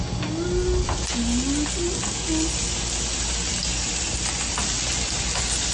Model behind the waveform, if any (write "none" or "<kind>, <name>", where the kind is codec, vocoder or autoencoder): none